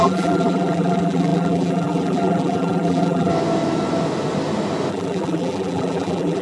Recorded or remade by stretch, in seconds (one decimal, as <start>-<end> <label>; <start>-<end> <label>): 0.0-3.3 remade; 3.3-4.9 recorded; 4.9-6.4 remade